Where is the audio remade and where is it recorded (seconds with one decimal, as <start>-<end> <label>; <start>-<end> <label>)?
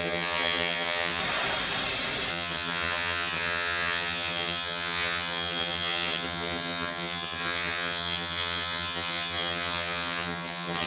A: 0.0-1.2 remade; 1.2-2.3 recorded; 2.3-10.9 remade